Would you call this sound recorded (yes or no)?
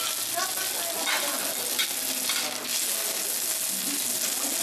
yes